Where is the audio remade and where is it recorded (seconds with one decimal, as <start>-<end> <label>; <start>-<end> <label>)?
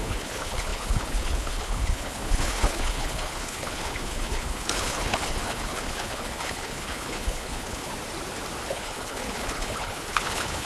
0.0-7.9 remade; 7.9-8.7 recorded; 8.7-10.7 remade